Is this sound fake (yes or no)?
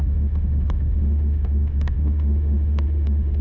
yes